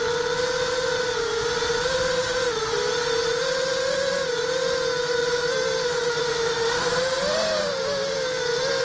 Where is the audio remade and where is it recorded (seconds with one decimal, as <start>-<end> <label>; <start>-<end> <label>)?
0.0-3.2 recorded; 3.2-4.7 remade; 4.7-5.2 recorded; 5.2-8.8 remade

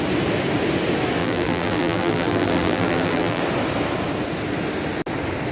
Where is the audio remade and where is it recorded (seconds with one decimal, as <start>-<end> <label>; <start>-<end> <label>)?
0.0-1.2 recorded; 1.2-3.4 remade; 3.4-5.5 recorded

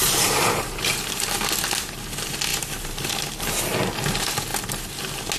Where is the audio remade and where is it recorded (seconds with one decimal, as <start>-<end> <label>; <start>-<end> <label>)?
0.0-0.9 remade; 0.9-2.5 recorded; 2.5-3.0 remade; 3.0-5.4 recorded

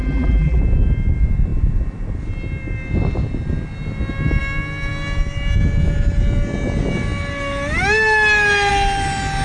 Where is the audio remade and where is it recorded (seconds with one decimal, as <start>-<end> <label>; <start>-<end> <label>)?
0.0-0.6 remade; 0.6-9.4 recorded

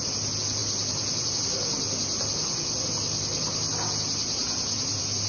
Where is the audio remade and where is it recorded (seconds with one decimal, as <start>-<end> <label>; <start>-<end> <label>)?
0.0-0.6 recorded; 0.6-1.3 remade; 1.3-4.4 recorded; 4.4-5.3 remade

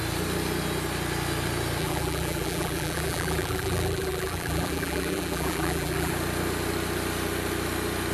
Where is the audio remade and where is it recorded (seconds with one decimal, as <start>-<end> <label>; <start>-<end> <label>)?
0.0-1.8 recorded; 1.8-6.1 remade; 6.1-8.1 recorded

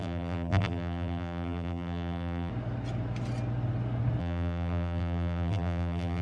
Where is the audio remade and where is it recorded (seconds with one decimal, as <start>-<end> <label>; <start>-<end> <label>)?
0.0-2.5 remade; 2.5-4.2 recorded; 4.2-6.2 remade

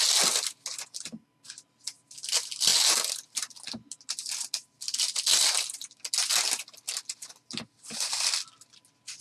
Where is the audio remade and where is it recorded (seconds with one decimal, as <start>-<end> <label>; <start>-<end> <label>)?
0.0-9.2 recorded